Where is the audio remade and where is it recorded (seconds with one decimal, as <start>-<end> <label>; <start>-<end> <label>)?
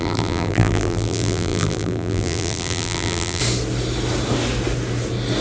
0.0-3.4 remade; 3.4-5.4 recorded